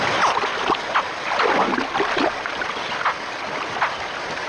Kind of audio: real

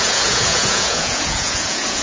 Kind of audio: fake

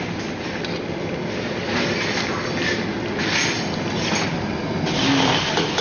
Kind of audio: real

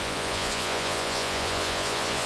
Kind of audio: fake